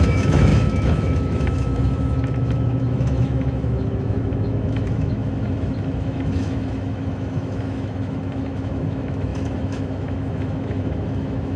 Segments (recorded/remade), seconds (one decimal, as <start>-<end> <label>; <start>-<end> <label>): 0.0-11.6 remade